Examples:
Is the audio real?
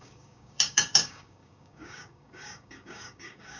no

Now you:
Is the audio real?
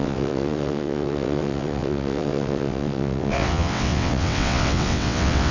no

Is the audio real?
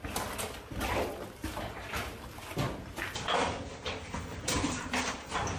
no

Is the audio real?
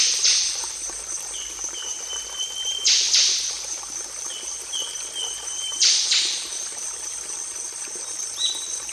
no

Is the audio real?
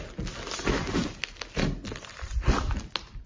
yes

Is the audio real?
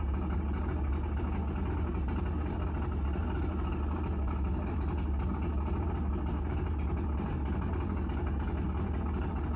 yes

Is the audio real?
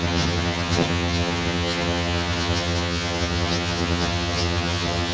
no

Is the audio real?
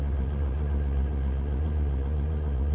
no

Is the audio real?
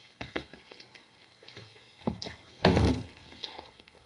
no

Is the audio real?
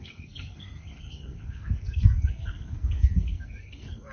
no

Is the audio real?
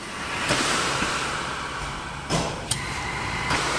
no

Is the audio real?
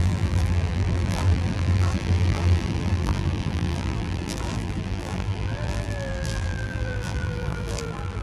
no